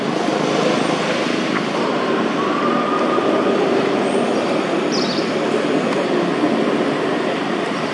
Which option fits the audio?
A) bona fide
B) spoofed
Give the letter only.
A